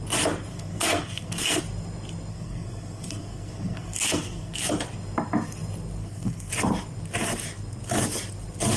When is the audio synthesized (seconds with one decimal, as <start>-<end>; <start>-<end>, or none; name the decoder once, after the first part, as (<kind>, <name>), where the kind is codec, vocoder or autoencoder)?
0.5-1.6 (codec, SNAC); 2.3-4.7; 6.0-6.5